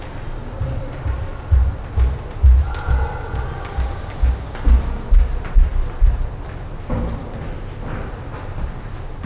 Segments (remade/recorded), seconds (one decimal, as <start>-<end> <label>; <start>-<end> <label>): 0.0-9.3 recorded